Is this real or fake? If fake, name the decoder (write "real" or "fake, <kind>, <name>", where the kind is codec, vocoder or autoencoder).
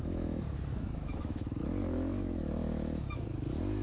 fake, autoencoder, DAC-VAE